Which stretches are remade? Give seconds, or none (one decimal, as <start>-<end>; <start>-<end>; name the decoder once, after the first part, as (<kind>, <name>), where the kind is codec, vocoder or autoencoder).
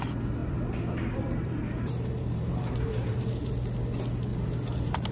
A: 0.4-3.5 (vocoder, BigVGAN v2); 4.3-5.1